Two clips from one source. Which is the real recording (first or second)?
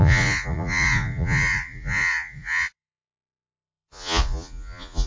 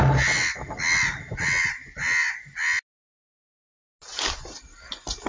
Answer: second